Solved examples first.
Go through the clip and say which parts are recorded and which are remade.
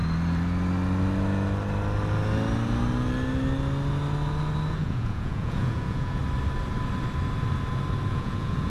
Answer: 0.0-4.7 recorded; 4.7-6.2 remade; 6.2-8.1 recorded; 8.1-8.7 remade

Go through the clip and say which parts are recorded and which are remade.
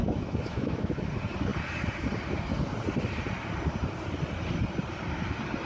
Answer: 0.0-1.1 remade; 1.1-5.7 recorded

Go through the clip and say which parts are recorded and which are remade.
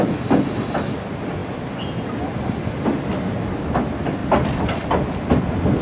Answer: 0.0-5.8 recorded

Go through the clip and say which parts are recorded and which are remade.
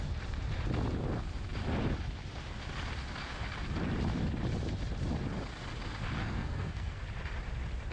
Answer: 0.0-6.2 recorded; 6.2-7.0 remade; 7.0-7.9 recorded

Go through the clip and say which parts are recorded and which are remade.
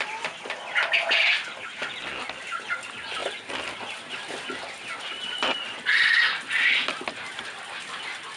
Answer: 0.0-8.4 recorded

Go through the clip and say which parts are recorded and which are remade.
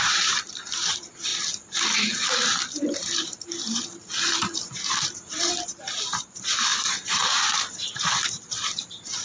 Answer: 0.0-1.3 remade; 1.3-2.7 recorded; 2.7-9.2 remade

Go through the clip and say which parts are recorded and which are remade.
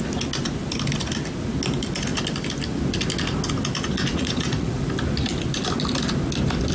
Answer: 0.0-4.1 recorded; 4.1-4.8 remade; 4.8-6.7 recorded